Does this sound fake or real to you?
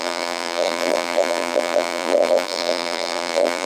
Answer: fake